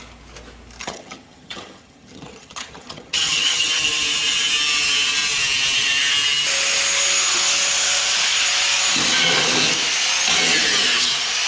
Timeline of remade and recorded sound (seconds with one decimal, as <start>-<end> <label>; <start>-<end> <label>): 0.0-0.8 recorded; 0.8-3.7 remade; 3.7-11.5 recorded